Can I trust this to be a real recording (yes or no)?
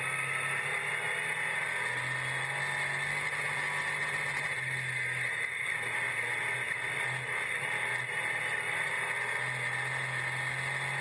yes